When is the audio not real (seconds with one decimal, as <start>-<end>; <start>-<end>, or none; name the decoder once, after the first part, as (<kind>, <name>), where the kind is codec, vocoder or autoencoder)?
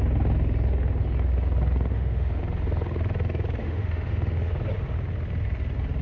1.9-2.4 (autoencoder, DAC-VAE); 3.6-4.5